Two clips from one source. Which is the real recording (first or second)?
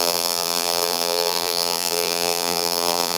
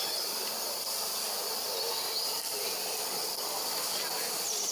second